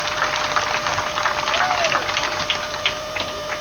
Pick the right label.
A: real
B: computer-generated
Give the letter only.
A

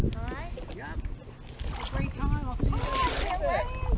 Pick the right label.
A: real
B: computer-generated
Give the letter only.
A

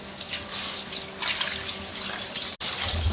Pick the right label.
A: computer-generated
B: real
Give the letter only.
B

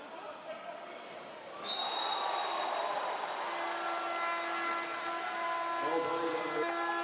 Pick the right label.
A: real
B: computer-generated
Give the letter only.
A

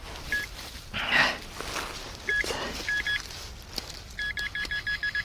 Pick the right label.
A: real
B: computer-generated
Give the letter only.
A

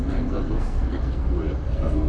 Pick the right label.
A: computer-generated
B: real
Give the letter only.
A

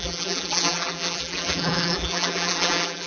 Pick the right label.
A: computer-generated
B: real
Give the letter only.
A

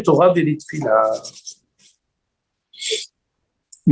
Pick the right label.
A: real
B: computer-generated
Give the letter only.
A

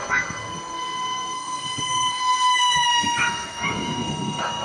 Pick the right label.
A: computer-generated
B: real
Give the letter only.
A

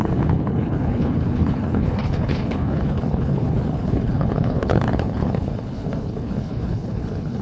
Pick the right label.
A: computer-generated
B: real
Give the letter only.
A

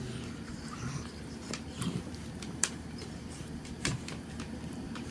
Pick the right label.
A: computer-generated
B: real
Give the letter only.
A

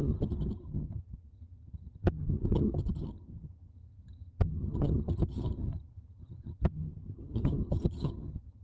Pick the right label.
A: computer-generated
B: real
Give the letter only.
A